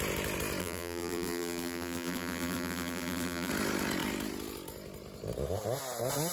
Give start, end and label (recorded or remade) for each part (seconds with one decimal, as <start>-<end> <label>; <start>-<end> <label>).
0.0-0.6 recorded; 0.6-3.5 remade; 3.5-6.3 recorded

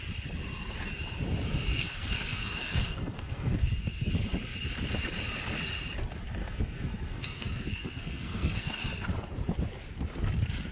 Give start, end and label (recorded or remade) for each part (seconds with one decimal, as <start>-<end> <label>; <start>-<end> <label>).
0.0-1.7 recorded; 1.7-4.1 remade; 4.1-6.4 recorded; 6.4-8.8 remade; 8.8-10.7 recorded

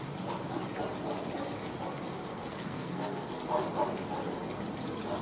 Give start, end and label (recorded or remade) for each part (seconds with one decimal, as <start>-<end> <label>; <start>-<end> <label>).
0.0-2.3 recorded; 2.3-3.3 remade; 3.3-5.2 recorded

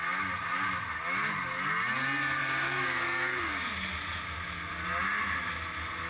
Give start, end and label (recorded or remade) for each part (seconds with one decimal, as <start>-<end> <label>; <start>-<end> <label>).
0.0-2.4 recorded; 2.4-3.7 remade; 3.7-6.1 recorded